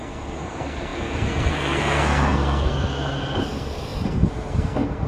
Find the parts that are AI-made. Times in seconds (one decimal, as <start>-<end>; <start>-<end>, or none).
0.0-5.1